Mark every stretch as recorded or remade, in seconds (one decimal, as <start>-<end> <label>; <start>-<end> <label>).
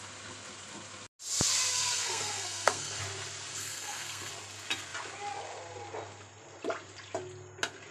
0.0-1.7 recorded; 1.7-3.0 remade; 3.0-3.5 recorded; 3.5-4.3 remade; 4.3-7.9 recorded